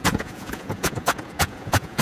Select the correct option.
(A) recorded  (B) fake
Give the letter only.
B